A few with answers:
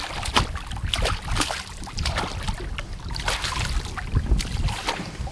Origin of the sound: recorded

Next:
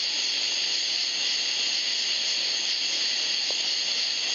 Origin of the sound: recorded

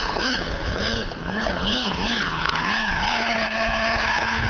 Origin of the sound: remade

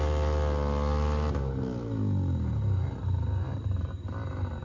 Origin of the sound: recorded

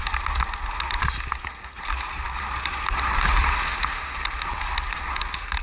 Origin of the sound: recorded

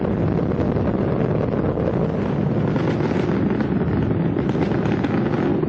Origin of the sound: recorded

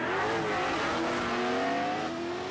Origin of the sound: recorded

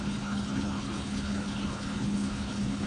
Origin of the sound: remade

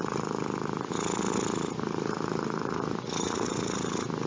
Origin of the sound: recorded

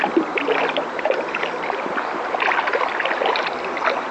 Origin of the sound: recorded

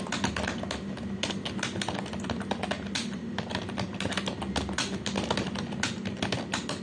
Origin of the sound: recorded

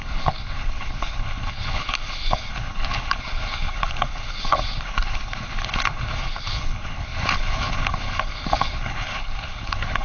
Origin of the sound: remade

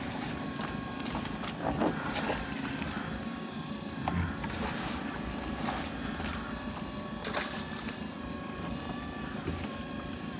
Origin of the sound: recorded